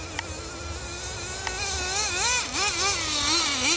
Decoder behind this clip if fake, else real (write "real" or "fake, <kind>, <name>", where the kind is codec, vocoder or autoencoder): real